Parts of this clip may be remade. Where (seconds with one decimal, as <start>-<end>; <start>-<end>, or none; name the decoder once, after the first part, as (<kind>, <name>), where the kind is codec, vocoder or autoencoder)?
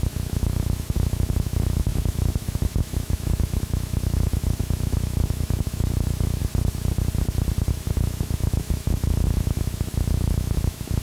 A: 0.0-6.4 (autoencoder, DAC-VAE); 7.7-11.0